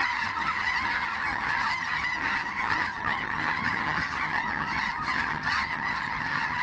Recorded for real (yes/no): no